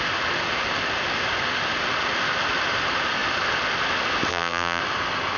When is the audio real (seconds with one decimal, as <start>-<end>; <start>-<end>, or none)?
0.0-4.3; 4.8-5.4